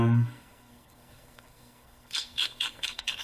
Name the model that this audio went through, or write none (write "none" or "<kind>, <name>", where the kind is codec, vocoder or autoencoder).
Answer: codec, SNAC